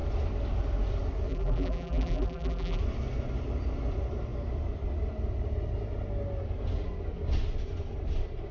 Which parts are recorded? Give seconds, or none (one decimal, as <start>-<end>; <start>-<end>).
0.0-1.3; 2.8-8.5